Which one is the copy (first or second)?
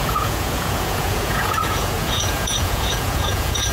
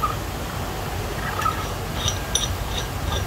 first